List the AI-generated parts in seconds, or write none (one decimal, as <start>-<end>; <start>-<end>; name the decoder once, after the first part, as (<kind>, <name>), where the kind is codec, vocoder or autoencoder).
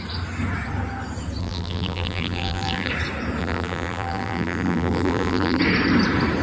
1.4-2.9 (vocoder, BigVGAN v2); 3.4-5.6